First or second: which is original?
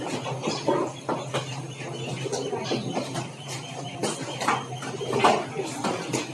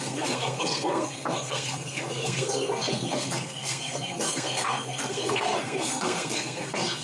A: first